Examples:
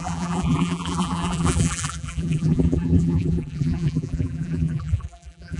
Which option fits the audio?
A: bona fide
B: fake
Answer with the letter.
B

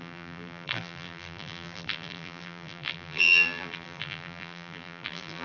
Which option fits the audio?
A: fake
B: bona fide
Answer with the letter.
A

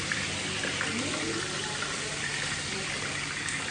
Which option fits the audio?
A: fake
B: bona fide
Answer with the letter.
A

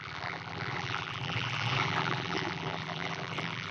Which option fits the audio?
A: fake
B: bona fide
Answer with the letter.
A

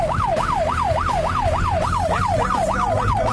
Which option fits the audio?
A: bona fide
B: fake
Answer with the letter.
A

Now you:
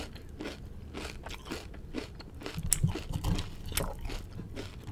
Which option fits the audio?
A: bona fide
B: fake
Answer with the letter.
A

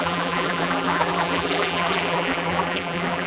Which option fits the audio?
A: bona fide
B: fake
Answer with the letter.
B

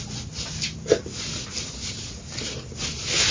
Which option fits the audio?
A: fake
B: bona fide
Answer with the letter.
B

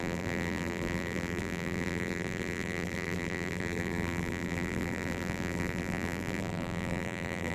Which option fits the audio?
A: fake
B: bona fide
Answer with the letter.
A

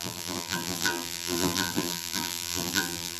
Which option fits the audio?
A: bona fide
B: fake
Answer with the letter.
B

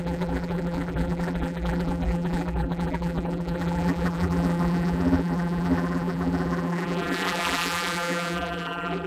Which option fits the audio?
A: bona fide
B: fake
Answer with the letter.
B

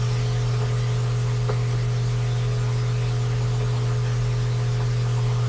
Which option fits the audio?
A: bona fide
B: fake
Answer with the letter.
A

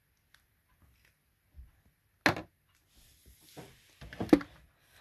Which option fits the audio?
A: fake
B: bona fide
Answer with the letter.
B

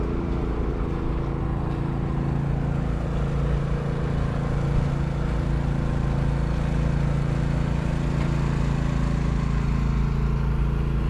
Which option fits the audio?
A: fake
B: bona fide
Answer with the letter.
B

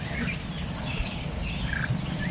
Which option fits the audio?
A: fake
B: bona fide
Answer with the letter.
B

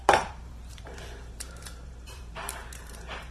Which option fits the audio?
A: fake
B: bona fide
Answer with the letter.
A